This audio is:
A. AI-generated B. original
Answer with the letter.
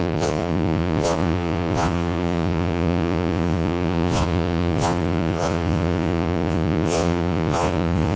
A